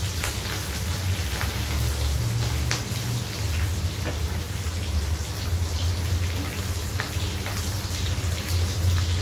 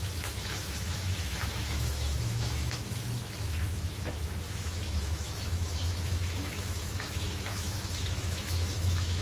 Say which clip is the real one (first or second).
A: first